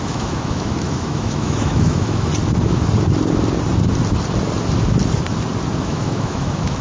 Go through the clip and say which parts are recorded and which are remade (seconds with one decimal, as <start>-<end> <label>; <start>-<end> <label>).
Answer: 0.0-2.3 remade; 2.3-5.8 recorded; 5.8-6.8 remade